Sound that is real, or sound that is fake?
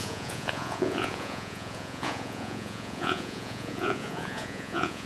fake